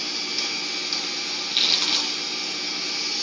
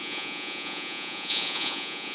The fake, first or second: second